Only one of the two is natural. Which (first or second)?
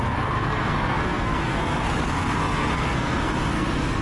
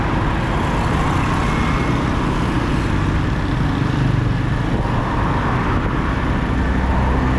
second